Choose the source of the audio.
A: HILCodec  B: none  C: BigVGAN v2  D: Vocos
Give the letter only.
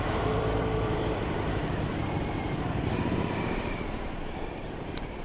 C